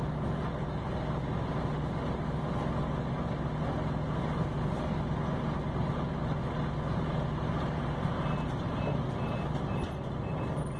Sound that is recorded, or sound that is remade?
recorded